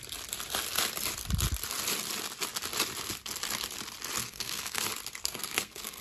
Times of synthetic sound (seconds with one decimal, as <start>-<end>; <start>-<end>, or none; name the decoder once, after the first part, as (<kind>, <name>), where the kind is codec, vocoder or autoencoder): 4.2-4.8 (codec, SNAC); 5.2-6.0